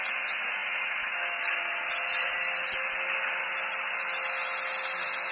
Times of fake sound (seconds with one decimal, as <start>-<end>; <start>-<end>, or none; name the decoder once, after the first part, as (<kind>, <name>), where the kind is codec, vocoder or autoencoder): none